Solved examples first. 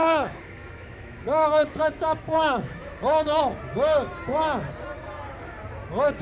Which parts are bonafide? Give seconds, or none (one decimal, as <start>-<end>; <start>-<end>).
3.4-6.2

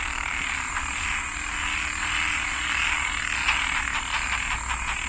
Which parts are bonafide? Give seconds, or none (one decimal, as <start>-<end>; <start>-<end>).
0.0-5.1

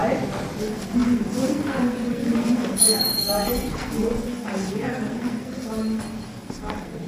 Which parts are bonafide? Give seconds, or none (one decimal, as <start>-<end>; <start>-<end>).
0.0-0.6

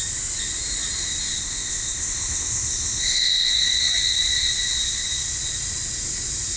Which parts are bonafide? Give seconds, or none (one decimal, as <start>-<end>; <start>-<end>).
0.0-1.4; 3.5-6.6

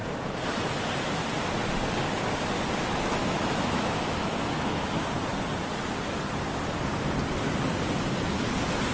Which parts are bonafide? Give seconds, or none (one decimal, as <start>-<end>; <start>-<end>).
0.0-3.2; 4.8-8.9

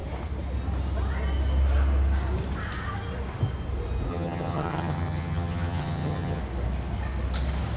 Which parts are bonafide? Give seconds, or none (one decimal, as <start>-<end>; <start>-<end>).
0.0-4.1; 6.4-7.8

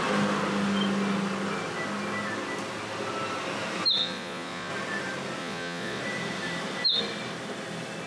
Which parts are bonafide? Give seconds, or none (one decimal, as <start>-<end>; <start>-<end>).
0.0-4.0; 4.7-5.4; 6.0-8.1

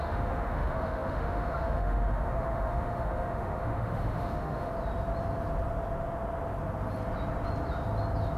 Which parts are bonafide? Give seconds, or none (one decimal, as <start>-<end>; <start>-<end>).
4.7-8.4